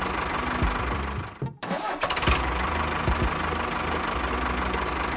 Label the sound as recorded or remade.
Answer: recorded